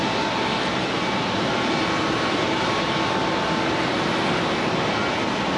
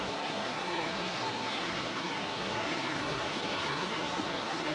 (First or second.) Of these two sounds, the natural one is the first